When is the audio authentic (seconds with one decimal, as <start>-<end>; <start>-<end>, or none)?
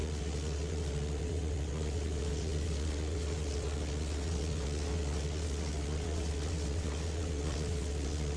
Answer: none